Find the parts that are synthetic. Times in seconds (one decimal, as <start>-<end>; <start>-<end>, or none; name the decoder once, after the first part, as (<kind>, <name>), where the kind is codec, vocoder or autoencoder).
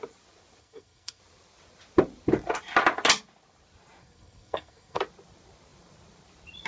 0.6-1.2 (codec, SNAC); 4.0-5.0